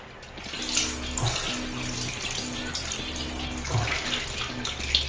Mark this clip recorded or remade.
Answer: recorded